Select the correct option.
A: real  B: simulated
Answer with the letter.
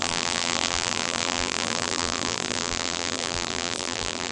B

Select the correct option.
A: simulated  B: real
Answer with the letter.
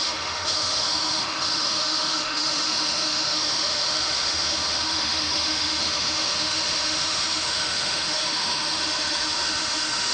A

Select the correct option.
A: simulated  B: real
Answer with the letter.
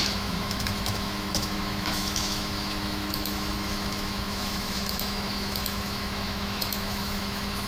A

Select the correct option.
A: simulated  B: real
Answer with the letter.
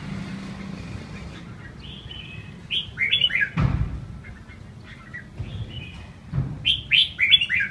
B